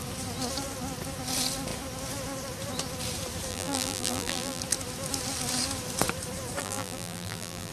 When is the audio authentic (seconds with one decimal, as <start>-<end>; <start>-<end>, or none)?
0.0-3.5; 4.6-6.6